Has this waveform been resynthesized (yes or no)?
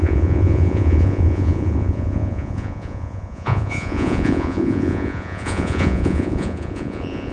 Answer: yes